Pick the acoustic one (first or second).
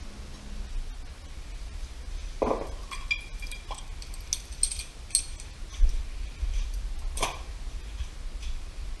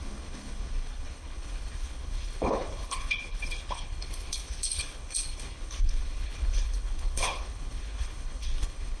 first